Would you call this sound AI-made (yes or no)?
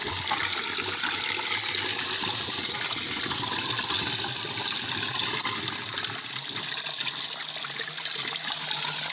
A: no